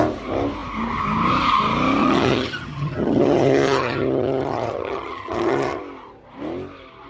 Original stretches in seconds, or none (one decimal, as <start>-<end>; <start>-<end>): 0.0-2.0; 5.8-7.1